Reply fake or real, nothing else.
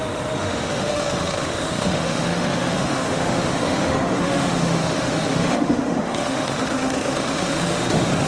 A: fake